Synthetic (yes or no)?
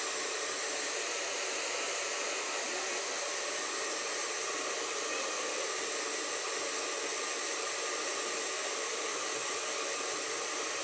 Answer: no